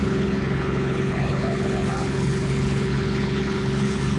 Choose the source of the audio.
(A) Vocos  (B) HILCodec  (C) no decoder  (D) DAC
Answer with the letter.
B